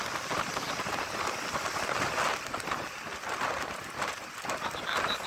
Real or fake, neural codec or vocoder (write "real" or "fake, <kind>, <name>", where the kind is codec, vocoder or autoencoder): real